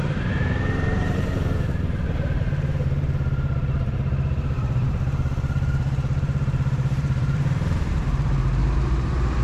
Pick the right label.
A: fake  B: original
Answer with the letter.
A